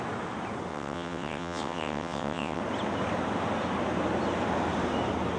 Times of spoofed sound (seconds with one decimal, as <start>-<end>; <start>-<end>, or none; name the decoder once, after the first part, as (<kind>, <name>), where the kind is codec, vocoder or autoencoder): 0.7-2.6 (vocoder, WaveNeXt)